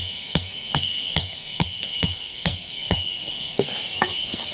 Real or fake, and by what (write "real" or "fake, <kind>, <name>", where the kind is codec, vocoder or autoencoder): fake, codec, SNAC